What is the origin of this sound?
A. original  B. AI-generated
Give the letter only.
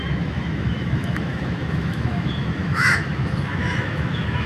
B